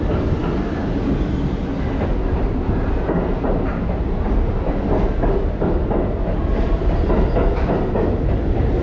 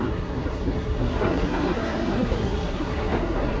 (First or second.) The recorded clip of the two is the first